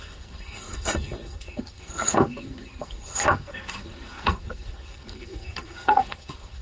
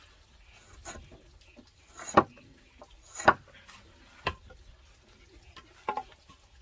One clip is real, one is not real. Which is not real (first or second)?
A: first